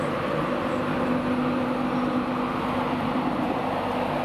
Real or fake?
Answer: real